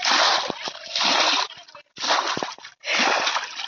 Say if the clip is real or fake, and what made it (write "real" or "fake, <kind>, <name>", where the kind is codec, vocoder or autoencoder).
real